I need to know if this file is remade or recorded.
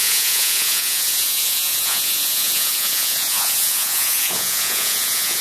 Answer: remade